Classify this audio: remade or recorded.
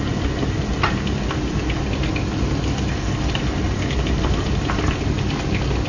recorded